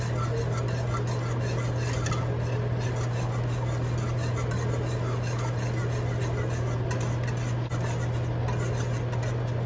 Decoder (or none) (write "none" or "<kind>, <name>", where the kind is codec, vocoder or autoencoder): none